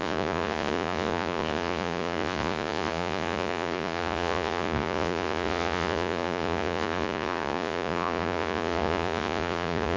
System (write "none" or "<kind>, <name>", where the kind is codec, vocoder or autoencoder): vocoder, Vocos